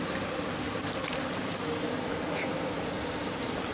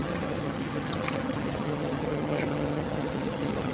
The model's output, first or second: second